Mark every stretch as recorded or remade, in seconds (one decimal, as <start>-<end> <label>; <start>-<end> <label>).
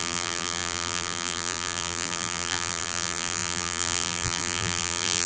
0.0-5.3 remade